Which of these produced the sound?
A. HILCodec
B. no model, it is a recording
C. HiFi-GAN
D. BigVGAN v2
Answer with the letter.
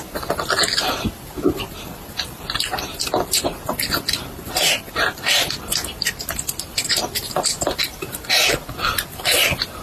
D